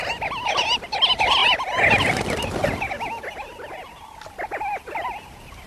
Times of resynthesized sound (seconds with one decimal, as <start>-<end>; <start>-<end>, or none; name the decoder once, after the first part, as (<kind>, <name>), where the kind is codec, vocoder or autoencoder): none